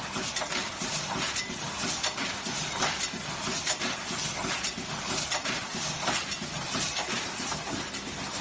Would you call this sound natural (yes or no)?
yes